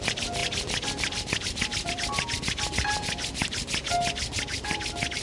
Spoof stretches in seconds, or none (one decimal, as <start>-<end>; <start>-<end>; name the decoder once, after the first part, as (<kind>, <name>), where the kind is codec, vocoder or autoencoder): 0.0-3.4 (vocoder, BigVGAN v2); 4.1-5.2

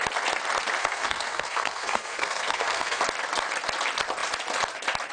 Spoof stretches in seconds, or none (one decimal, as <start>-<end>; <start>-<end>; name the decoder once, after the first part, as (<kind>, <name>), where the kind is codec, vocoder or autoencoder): 0.8-3.0 (codec, SNAC)

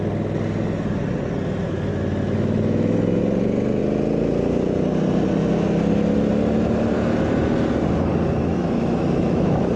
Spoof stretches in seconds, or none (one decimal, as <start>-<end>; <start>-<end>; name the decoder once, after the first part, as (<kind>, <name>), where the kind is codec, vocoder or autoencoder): 1.9-3.2 (autoencoder, DAC-VAE); 8.4-9.8

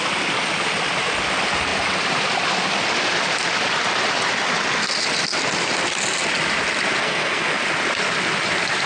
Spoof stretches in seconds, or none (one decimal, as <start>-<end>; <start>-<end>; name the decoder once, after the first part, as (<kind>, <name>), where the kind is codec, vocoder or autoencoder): 7.0-7.6 (codec, SNAC)